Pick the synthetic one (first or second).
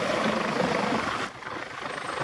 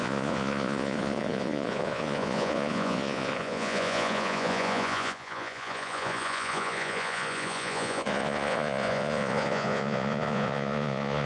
second